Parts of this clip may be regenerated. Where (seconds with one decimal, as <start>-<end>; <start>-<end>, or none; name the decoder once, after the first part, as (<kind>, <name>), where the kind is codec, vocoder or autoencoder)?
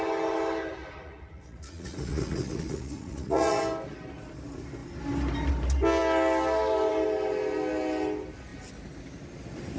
0.8-3.6 (vocoder, Vocos)